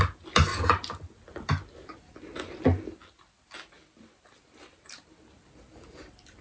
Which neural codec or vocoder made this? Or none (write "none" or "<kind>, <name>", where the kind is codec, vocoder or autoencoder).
none